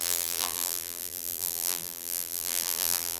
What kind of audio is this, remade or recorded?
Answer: remade